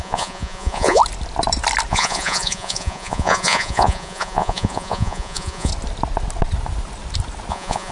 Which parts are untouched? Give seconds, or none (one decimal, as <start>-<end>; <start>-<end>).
1.0-1.9; 5.7-7.5